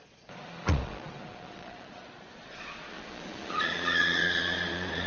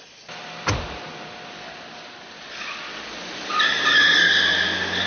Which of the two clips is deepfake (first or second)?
first